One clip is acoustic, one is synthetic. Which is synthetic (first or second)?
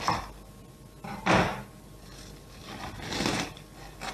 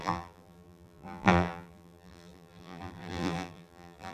second